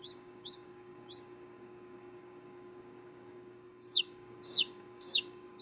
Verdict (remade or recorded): remade